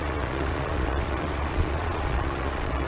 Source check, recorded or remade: remade